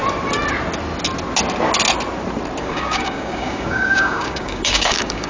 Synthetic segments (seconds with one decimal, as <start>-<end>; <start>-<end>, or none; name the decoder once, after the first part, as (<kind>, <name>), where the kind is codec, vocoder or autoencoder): 2.6-5.3 (codec, DAC)